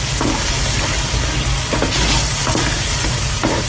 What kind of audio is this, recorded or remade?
recorded